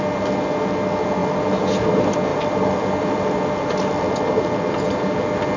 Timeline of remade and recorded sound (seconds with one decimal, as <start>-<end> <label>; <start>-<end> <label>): 0.0-1.2 recorded; 1.2-1.8 remade; 1.8-2.3 recorded; 2.3-3.9 remade; 3.9-5.6 recorded